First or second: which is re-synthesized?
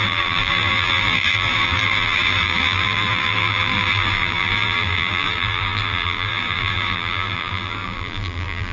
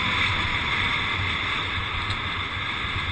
first